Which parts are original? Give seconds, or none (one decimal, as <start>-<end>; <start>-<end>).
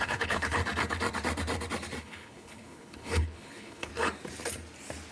0.6-2.0; 3.9-5.1